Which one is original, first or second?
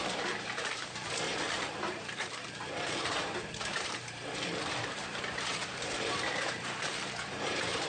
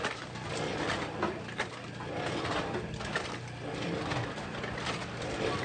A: second